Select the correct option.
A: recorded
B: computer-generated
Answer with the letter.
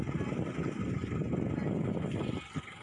A